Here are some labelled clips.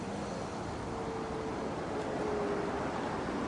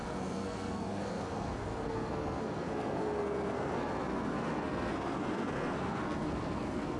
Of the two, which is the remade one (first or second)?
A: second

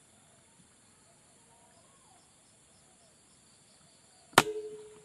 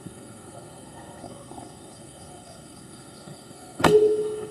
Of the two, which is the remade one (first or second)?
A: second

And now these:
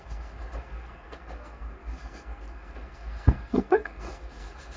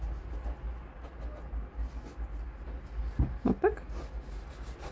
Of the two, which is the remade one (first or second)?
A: first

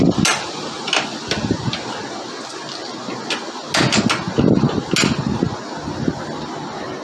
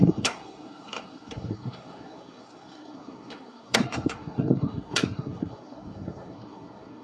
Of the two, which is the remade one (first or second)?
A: second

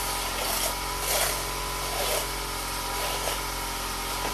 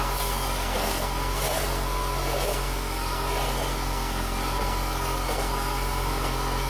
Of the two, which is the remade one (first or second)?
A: second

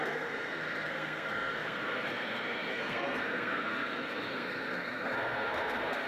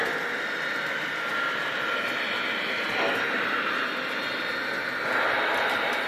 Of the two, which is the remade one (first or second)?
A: first